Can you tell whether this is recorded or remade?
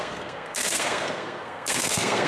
remade